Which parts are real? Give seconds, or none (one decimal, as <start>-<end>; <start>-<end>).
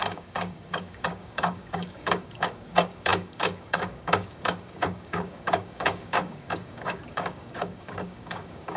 none